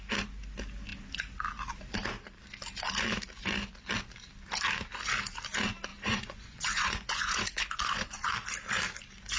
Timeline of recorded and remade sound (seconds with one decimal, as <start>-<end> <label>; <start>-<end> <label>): 0.0-5.9 recorded; 5.9-8.3 remade; 8.3-9.4 recorded

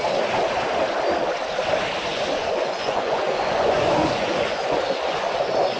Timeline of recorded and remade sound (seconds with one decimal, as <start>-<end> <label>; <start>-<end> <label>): 0.0-2.1 recorded; 2.1-5.8 remade

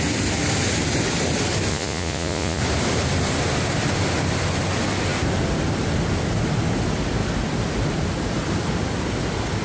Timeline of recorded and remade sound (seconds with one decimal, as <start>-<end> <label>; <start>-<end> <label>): 0.0-1.7 recorded; 1.7-2.6 remade; 2.6-9.6 recorded

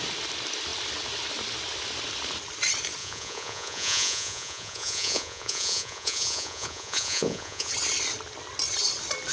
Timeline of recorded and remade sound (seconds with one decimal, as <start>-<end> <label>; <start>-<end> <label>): 0.0-3.0 recorded; 3.0-7.7 remade; 7.7-9.3 recorded